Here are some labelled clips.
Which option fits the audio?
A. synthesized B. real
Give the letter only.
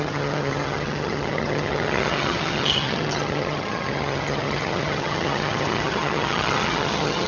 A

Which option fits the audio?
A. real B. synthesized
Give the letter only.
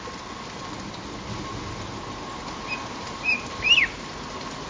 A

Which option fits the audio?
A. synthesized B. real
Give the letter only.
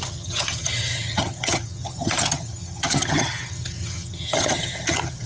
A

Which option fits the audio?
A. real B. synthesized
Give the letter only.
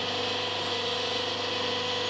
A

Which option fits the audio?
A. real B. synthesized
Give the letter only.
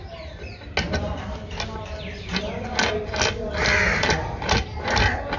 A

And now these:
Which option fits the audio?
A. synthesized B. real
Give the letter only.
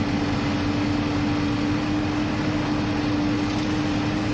B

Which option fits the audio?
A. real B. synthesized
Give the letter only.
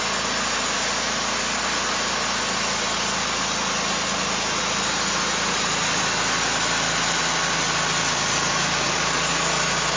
A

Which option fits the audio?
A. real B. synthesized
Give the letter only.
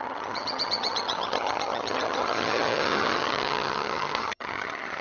B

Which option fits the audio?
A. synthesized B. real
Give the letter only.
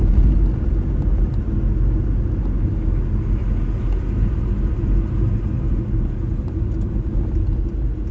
B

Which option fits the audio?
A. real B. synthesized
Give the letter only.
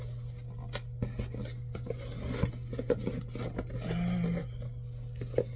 A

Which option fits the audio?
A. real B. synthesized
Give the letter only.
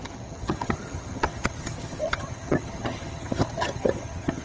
B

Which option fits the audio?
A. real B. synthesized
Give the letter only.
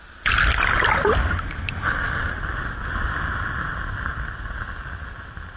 A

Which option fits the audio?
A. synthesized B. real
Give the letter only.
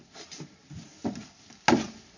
B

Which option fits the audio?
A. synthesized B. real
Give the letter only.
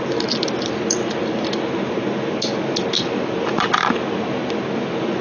B